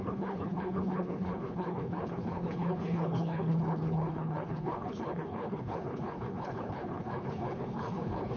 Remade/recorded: remade